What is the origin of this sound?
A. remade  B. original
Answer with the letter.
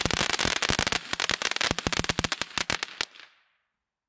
B